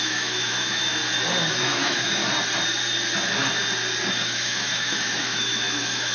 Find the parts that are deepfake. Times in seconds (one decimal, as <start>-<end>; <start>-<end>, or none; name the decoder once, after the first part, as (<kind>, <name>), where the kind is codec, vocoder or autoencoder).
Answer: 0.0-1.0 (autoencoder, DAC-VAE); 1.5-2.2; 4.2-6.1